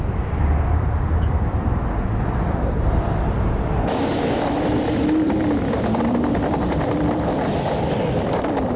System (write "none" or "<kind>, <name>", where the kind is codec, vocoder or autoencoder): vocoder, BigVGAN v2